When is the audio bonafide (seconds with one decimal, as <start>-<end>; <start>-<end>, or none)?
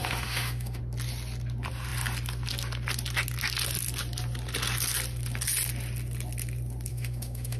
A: 0.8-6.9